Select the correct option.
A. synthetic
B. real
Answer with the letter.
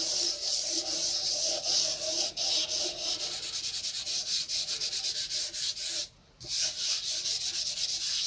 B